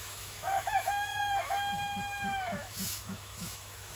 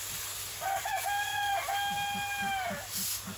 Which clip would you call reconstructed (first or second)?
first